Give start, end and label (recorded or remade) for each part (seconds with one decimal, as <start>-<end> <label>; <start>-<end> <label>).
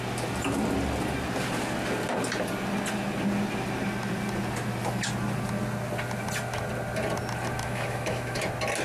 0.0-7.6 recorded; 7.6-8.4 remade; 8.4-8.8 recorded